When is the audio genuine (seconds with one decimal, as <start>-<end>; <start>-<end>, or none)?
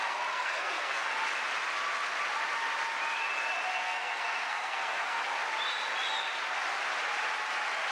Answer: 1.1-3.8; 5.2-7.9